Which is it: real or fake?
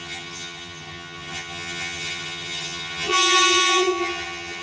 fake